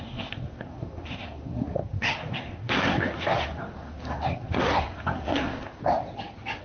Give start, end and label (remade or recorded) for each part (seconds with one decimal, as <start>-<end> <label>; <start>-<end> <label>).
0.0-5.8 remade; 5.8-6.6 recorded